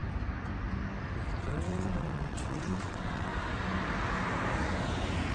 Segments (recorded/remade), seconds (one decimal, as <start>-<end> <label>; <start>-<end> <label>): 0.0-1.4 recorded; 1.4-3.3 remade; 3.3-5.3 recorded